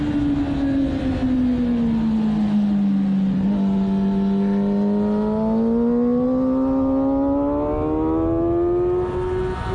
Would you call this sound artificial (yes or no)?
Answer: no